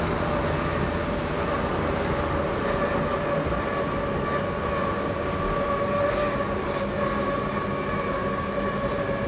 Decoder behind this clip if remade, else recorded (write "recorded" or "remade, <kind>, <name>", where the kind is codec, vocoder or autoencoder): recorded